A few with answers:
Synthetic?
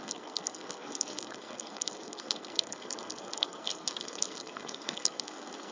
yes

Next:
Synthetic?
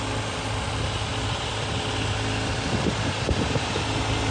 no